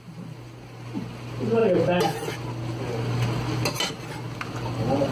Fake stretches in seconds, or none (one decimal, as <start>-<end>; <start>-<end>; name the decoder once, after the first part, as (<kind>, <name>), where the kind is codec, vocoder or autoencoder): none